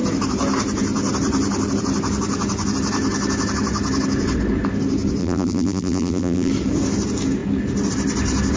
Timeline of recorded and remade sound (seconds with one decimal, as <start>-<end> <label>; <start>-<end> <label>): 0.0-5.2 recorded; 5.2-6.5 remade; 6.5-8.6 recorded